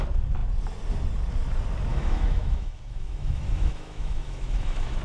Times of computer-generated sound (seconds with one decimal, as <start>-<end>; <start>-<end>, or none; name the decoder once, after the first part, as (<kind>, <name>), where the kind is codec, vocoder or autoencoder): 1.9-5.0 (autoencoder, DAC-VAE)